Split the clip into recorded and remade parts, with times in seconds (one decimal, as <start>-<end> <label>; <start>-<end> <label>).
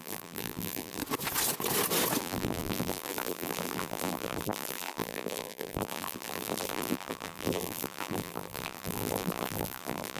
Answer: 0.0-1.0 remade; 1.0-2.2 recorded; 2.2-10.2 remade